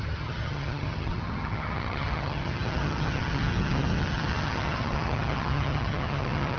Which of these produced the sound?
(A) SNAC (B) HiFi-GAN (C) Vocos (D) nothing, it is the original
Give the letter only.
B